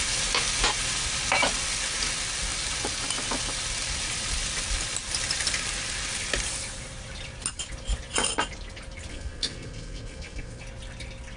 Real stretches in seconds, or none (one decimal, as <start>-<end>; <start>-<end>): 0.0-9.1; 10.6-11.4